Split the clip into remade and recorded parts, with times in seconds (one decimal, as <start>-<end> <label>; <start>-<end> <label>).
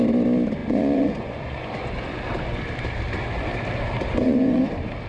0.0-0.6 recorded; 0.6-1.9 remade; 1.9-4.1 recorded; 4.1-4.6 remade; 4.6-5.1 recorded